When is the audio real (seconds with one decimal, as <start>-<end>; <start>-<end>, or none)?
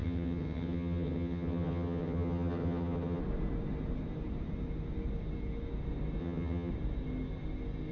3.2-6.2; 6.7-7.9